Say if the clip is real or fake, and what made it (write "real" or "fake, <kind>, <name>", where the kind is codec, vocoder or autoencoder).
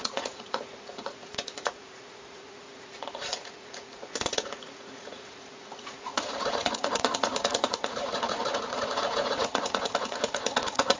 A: fake, vocoder, Vocos